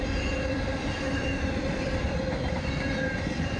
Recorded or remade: remade